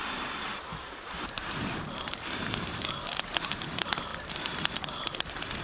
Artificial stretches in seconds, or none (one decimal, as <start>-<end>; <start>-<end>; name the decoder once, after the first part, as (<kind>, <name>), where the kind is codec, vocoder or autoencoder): 0.0-4.1 (vocoder, BigVGAN v2)